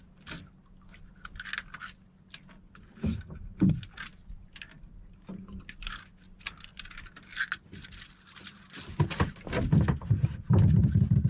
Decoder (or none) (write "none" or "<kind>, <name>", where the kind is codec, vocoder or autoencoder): none